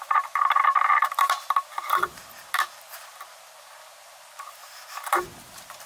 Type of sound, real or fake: fake